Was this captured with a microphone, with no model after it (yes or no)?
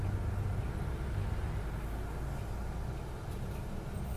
yes